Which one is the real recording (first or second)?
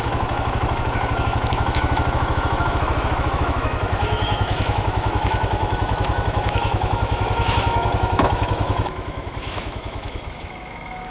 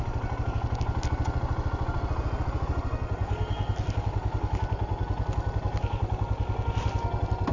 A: second